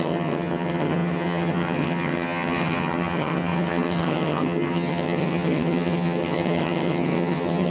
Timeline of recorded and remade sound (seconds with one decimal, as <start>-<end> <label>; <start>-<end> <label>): 0.0-7.7 remade

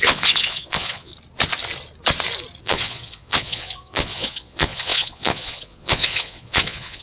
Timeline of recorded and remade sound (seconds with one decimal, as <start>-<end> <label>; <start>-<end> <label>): 0.0-1.1 remade; 1.1-2.6 recorded; 2.6-7.0 remade

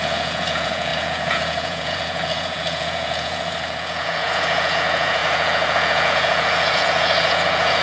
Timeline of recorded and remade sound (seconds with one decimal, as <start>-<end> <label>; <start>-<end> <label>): 0.0-7.8 remade

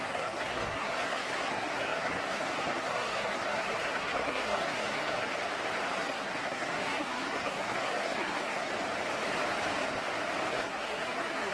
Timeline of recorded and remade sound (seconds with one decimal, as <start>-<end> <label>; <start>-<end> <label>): 0.0-5.3 remade; 5.3-6.0 recorded; 6.0-8.7 remade; 8.7-10.5 recorded; 10.5-11.5 remade

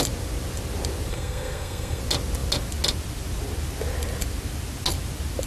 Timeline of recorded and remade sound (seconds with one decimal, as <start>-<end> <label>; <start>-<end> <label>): 0.0-1.1 recorded; 1.1-2.0 remade; 2.0-5.5 recorded

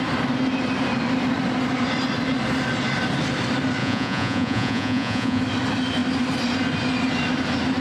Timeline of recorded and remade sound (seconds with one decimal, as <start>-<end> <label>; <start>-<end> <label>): 0.0-3.8 recorded; 3.8-5.4 remade; 5.4-7.8 recorded